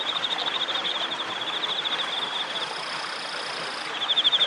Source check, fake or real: real